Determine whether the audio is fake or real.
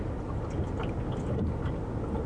real